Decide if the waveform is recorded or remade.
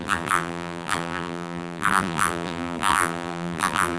remade